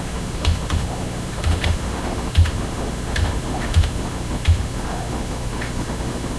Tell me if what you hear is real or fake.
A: fake